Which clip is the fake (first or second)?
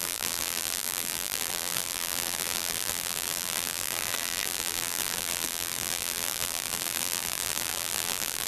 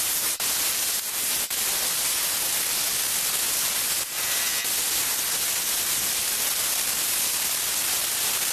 first